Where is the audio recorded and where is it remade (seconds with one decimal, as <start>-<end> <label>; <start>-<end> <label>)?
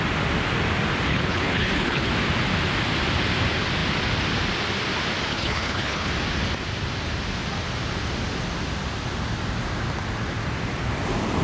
0.0-1.1 recorded; 1.1-2.1 remade; 2.1-5.3 recorded; 5.3-6.1 remade; 6.1-11.4 recorded